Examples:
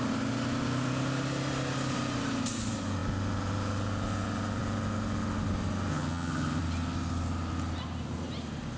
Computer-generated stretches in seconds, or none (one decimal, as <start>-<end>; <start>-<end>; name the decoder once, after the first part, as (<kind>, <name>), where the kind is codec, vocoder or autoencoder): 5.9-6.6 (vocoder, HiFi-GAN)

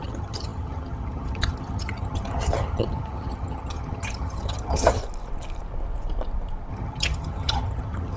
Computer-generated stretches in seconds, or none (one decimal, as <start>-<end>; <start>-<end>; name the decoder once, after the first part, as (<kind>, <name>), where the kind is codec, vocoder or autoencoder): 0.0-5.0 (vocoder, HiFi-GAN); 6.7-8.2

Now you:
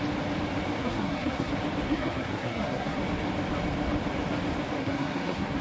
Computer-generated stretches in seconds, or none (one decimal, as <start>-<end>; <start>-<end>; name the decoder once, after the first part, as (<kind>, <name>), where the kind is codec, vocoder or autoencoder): 0.8-1.5 (codec, SNAC); 1.9-3.0; 4.8-5.6

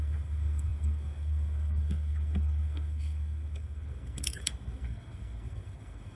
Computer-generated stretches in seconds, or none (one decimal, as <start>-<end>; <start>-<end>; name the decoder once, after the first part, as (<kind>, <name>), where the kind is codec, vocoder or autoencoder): 0.0-6.2 (codec, SNAC)

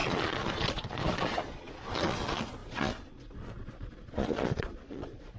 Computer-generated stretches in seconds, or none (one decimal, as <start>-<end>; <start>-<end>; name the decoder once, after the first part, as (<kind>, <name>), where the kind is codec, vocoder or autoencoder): 0.0-5.4 (vocoder, Vocos)